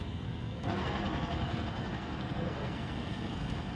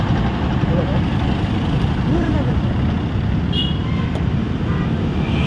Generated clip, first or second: first